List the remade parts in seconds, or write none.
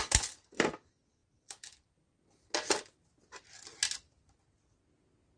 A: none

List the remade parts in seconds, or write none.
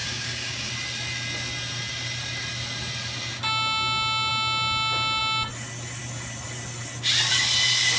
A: 0.0-0.7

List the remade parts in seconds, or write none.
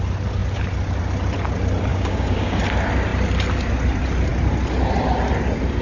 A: 1.9-2.6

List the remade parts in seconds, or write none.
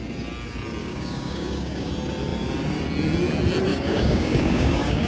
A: 0.8-1.9; 3.7-5.1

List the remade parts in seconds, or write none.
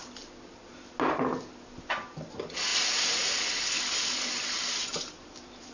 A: none